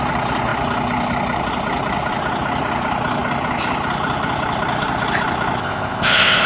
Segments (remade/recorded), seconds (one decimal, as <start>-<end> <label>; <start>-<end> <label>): 0.0-5.6 recorded; 5.6-6.5 remade